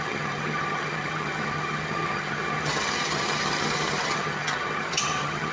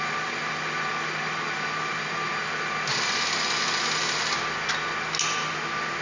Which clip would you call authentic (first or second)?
second